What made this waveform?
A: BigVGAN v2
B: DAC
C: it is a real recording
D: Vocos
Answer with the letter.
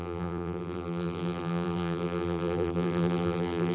A